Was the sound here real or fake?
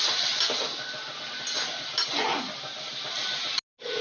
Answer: real